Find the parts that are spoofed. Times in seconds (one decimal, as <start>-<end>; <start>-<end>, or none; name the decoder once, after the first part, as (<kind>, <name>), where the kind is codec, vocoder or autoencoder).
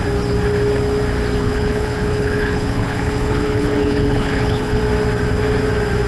1.4-4.8 (codec, HILCodec)